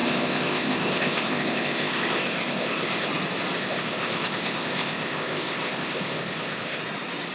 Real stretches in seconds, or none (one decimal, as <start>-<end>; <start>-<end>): 3.1-3.6; 6.8-7.3